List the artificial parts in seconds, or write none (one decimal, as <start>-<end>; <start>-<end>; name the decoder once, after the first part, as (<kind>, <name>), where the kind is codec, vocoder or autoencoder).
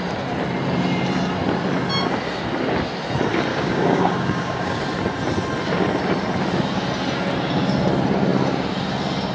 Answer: 3.5-4.8 (codec, DAC)